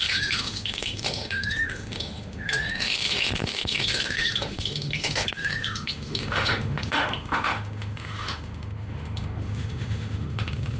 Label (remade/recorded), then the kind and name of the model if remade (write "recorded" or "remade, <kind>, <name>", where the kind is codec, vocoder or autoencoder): remade, autoencoder, DAC-VAE